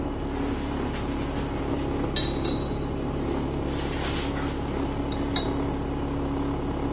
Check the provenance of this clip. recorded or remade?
recorded